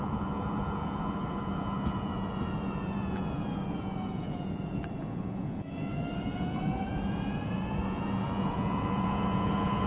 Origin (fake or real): fake